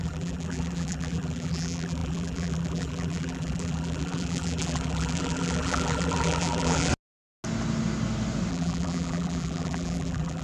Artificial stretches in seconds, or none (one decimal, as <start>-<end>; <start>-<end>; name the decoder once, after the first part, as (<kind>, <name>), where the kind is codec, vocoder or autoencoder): 0.0-6.9 (vocoder, BigVGAN v2); 8.5-10.4